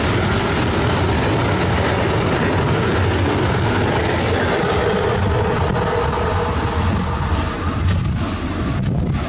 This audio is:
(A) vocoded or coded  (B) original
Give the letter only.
B